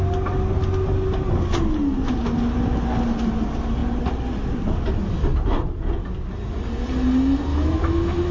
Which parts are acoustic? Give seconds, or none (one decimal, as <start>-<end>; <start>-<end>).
0.0-7.5